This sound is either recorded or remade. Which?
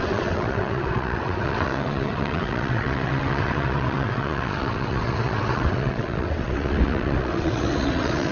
remade